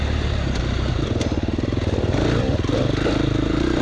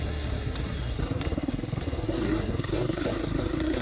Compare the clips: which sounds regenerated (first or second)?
second